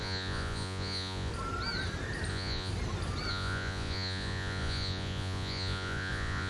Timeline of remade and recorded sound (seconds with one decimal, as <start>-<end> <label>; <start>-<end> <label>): 0.0-1.3 remade; 1.3-2.3 recorded; 2.3-2.7 remade; 2.7-3.3 recorded; 3.3-6.5 remade

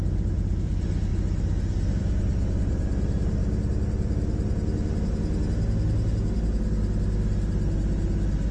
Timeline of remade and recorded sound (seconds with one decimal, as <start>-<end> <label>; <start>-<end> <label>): 0.0-1.1 remade; 1.1-2.0 recorded; 2.0-3.4 remade; 3.4-8.5 recorded

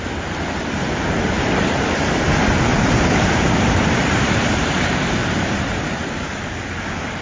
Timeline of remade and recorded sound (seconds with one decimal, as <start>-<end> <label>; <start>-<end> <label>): 0.0-0.8 recorded; 0.8-1.3 remade; 1.3-2.7 recorded; 2.7-6.3 remade; 6.3-7.2 recorded

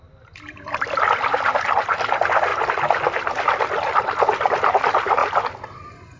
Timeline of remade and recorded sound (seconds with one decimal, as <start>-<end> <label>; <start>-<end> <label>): 0.0-6.2 recorded

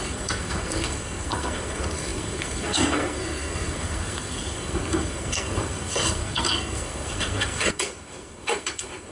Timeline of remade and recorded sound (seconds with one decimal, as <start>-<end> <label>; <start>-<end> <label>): 0.0-9.1 remade